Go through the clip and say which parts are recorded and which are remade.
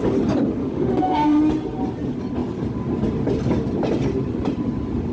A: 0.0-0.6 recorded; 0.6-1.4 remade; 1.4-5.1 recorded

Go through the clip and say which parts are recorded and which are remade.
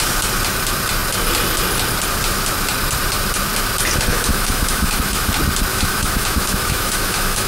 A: 0.0-4.1 recorded; 4.1-5.3 remade; 5.3-5.7 recorded; 5.7-7.5 remade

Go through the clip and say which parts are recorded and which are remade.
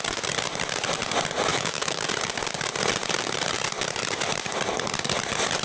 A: 0.0-1.5 recorded; 1.5-2.0 remade; 2.0-5.6 recorded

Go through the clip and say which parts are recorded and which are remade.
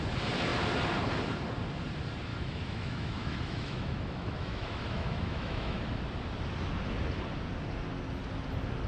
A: 0.0-2.3 recorded; 2.3-5.8 remade; 5.8-8.9 recorded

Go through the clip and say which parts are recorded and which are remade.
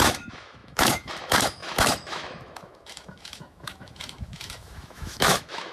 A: 0.0-5.7 remade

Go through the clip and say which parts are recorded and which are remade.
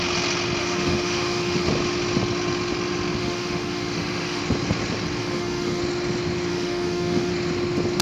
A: 0.0-0.6 recorded; 0.6-1.7 remade; 1.7-3.2 recorded; 3.2-4.4 remade; 4.4-5.2 recorded; 5.2-5.8 remade; 5.8-6.5 recorded; 6.5-7.3 remade; 7.3-8.0 recorded